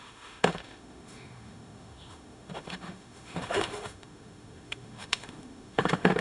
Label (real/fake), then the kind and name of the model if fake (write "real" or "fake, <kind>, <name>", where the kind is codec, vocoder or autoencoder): fake, autoencoder, DAC-VAE